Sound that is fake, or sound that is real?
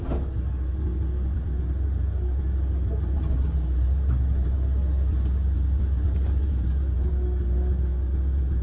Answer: real